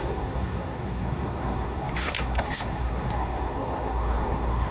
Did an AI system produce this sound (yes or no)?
yes